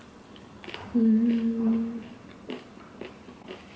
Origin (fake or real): real